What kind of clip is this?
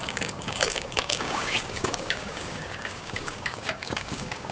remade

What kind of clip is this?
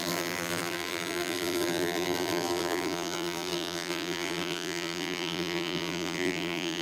remade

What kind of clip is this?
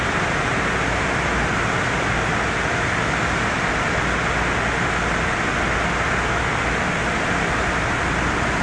recorded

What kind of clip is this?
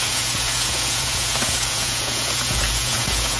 remade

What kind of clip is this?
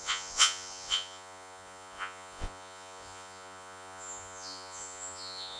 remade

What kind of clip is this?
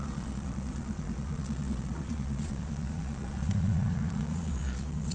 remade